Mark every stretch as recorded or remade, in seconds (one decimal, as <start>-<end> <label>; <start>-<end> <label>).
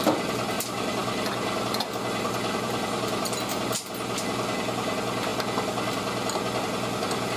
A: 0.0-7.4 recorded